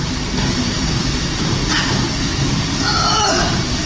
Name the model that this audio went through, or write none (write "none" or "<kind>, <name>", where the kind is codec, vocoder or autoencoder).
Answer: none